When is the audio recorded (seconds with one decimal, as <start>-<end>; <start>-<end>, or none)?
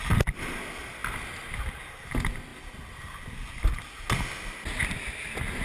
0.0-5.6